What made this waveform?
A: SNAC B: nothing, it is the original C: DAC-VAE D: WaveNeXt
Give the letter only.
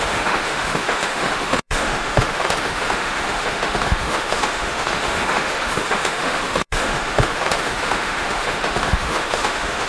C